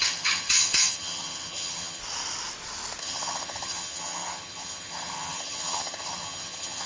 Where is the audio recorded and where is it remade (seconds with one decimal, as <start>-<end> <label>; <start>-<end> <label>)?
0.0-2.0 remade; 2.0-3.0 recorded; 3.0-6.9 remade